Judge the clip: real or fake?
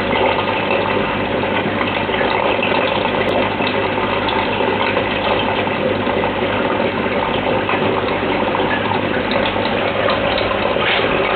real